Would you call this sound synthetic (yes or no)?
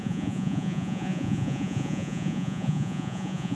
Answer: yes